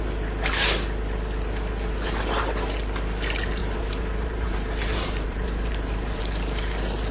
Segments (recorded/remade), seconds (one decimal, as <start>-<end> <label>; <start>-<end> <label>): 0.0-3.6 recorded; 3.6-6.2 remade; 6.2-7.1 recorded